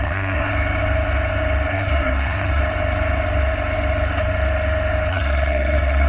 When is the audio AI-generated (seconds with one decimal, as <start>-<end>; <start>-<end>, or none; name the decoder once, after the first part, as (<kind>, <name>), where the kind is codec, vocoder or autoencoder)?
0.0-0.5 (codec, SNAC); 1.7-2.6; 5.1-6.1

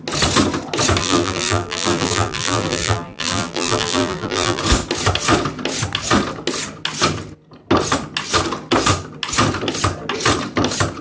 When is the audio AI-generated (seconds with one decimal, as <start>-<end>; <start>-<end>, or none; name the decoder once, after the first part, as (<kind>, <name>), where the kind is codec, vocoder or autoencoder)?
1.0-4.6 (vocoder, BigVGAN v2)

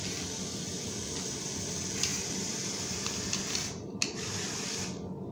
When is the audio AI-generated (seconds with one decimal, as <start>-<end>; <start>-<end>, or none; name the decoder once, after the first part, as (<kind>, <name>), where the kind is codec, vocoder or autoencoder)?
2.1-4.3 (vocoder, BigVGAN v2)

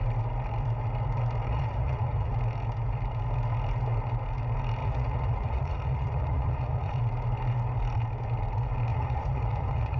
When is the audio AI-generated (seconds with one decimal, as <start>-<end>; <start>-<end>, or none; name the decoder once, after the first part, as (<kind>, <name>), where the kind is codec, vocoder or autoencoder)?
1.5-2.3 (vocoder, Vocos); 4.8-7.0; 8.9-10.0

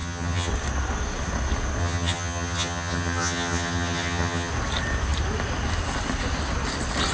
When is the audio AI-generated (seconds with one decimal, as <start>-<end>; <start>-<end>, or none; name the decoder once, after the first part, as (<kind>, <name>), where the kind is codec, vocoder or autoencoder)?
0.0-0.5 (vocoder, HiFi-GAN); 1.8-4.5

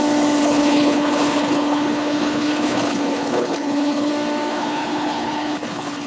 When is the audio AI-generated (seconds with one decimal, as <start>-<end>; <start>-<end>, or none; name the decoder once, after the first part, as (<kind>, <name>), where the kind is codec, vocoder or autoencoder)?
0.4-4.1 (codec, HILCodec); 4.5-6.1

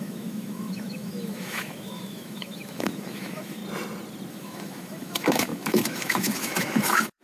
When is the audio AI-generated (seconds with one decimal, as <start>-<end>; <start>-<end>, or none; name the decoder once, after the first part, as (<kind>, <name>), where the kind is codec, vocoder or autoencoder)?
0.0-3.6 (autoencoder, DAC-VAE); 4.3-7.2